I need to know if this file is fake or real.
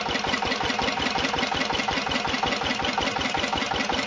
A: real